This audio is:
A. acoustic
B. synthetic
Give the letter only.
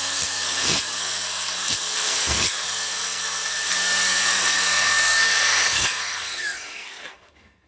B